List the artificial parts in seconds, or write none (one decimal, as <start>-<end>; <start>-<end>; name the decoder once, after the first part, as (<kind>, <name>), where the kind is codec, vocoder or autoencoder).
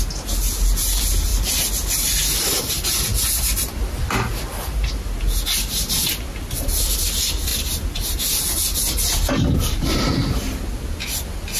none